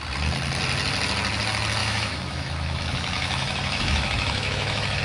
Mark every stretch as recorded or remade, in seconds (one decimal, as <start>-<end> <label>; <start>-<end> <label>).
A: 0.0-1.8 recorded; 1.8-5.0 remade